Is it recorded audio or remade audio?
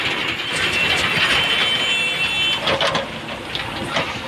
recorded